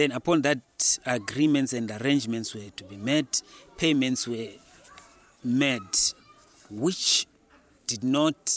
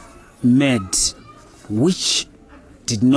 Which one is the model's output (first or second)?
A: first